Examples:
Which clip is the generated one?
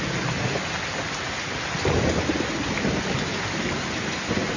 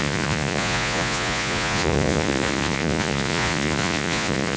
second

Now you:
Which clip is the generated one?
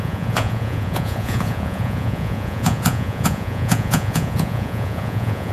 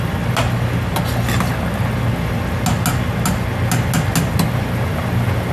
first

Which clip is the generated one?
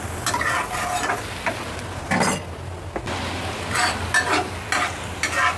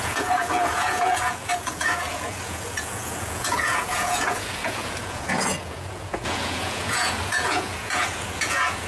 second